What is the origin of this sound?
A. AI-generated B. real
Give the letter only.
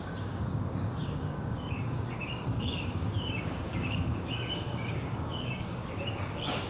A